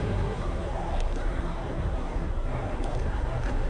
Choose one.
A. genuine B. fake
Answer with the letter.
B